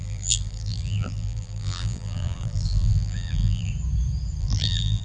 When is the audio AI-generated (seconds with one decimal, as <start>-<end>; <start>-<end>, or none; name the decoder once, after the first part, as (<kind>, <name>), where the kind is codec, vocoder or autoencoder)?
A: 0.0-3.7 (vocoder, BigVGAN v2); 4.4-5.0

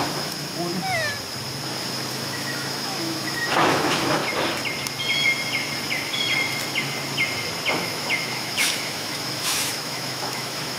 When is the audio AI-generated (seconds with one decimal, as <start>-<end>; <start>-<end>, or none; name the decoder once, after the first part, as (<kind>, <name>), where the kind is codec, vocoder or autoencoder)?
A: 0.0-0.7 (autoencoder, DAC-VAE); 2.1-4.2; 7.7-10.8

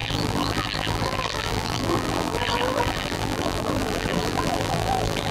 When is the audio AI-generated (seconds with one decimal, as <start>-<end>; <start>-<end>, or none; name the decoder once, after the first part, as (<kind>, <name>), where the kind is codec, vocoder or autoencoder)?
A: 0.0-5.3 (vocoder, BigVGAN v2)